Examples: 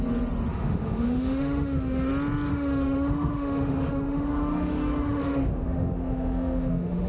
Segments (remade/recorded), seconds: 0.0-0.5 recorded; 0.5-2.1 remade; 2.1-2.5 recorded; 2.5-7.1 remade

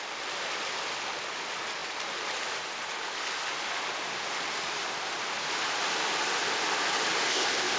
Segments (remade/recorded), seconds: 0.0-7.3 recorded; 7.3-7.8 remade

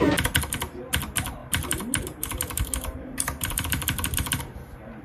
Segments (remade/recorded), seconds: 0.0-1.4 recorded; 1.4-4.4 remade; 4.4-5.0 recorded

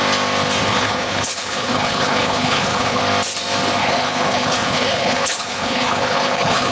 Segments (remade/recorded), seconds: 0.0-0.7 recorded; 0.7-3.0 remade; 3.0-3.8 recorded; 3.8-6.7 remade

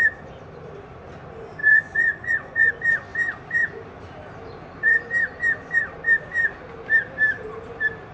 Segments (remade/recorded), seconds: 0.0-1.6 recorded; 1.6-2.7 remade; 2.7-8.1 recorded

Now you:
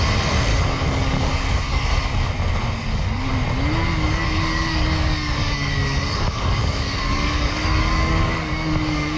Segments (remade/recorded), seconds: 0.0-0.5 recorded; 0.5-2.0 remade; 2.0-2.8 recorded; 2.8-3.3 remade; 3.3-3.9 recorded; 3.9-9.2 remade

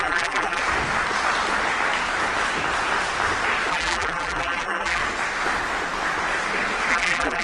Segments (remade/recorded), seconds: 0.0-0.6 remade; 0.6-3.7 recorded; 3.7-5.0 remade; 5.0-6.9 recorded; 6.9-7.4 remade